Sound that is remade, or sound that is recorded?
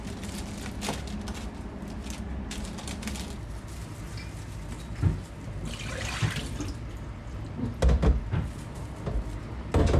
recorded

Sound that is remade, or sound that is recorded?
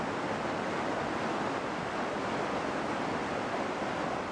recorded